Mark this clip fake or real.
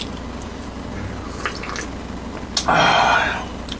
real